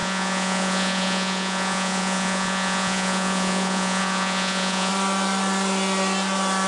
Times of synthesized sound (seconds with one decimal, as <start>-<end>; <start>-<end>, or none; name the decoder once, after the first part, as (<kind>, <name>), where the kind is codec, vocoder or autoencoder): 0.0-4.9 (vocoder, Vocos)